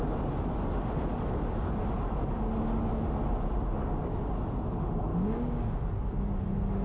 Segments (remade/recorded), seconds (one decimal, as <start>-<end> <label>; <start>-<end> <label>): 0.0-3.8 recorded; 3.8-4.3 remade; 4.3-5.1 recorded; 5.1-5.8 remade; 5.8-6.8 recorded